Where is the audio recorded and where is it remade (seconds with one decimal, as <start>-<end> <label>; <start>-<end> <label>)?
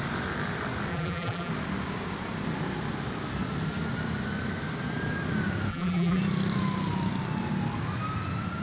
0.0-0.9 recorded; 0.9-1.5 remade; 1.5-5.7 recorded; 5.7-6.2 remade; 6.2-8.6 recorded